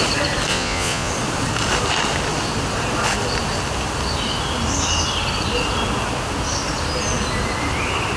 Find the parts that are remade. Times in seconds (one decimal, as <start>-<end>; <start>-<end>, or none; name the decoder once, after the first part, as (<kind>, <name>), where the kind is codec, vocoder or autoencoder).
0.5-1.1 (vocoder, Vocos)

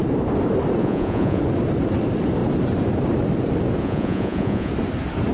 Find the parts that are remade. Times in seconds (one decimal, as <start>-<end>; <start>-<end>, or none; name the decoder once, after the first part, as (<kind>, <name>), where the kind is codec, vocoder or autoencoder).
0.8-1.4 (vocoder, Vocos); 3.8-4.7

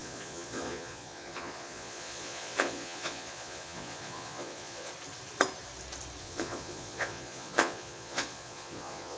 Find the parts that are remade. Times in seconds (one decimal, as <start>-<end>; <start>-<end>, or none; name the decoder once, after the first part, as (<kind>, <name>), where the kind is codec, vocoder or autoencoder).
0.0-4.9 (vocoder, Vocos); 6.2-9.2

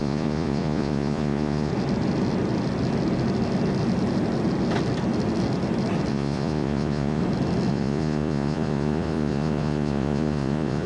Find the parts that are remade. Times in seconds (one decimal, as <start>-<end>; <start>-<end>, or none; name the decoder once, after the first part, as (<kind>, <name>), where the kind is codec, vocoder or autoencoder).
0.0-1.7 (vocoder, Vocos); 6.1-7.2; 7.7-10.9

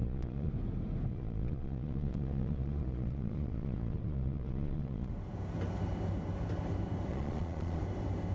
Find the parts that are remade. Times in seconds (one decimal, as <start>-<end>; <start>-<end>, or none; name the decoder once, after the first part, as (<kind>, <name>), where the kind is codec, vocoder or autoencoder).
0.0-0.5 (vocoder, Vocos); 1.1-5.1; 7.1-7.8

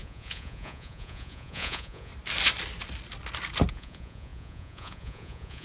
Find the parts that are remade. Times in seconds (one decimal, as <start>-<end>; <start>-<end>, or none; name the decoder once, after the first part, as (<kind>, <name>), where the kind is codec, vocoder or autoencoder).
0.0-2.1 (vocoder, Vocos); 3.7-5.6